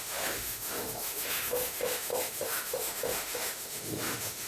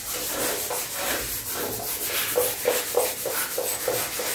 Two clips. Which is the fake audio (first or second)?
first